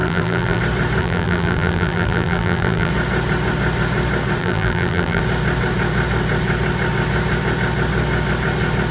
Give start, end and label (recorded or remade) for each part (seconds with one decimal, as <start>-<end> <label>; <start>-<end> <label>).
0.0-0.6 remade; 0.6-1.0 recorded; 1.0-2.9 remade; 2.9-4.4 recorded; 4.4-5.2 remade; 5.2-8.9 recorded